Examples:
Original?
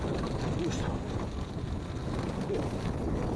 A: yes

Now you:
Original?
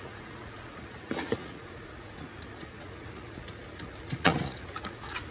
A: no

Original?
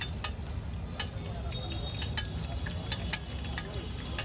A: yes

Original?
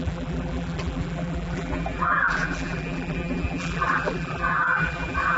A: no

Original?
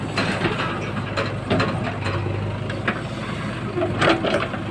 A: yes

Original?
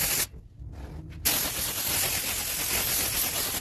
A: yes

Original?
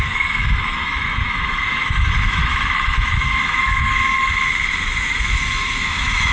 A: no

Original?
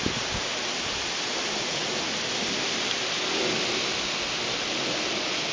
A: yes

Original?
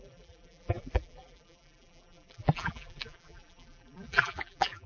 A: no